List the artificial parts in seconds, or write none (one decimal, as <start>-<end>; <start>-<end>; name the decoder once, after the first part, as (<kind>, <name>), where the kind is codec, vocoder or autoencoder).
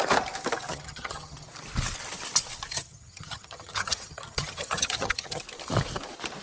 0.7-1.5 (vocoder, HiFi-GAN); 2.7-5.4